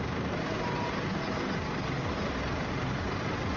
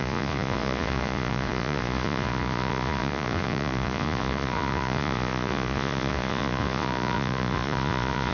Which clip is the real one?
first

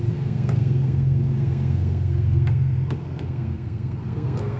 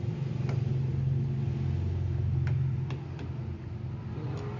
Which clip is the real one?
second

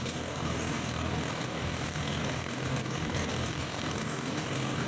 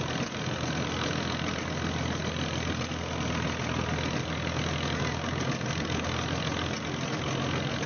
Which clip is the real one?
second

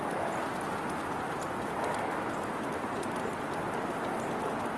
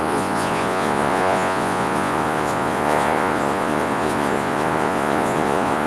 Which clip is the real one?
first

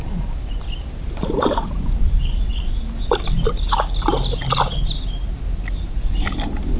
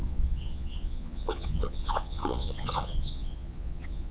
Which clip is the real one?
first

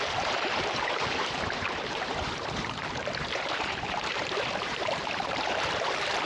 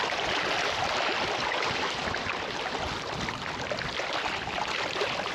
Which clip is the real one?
second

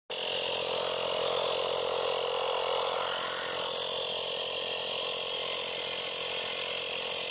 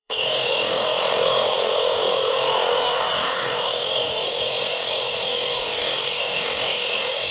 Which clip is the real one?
first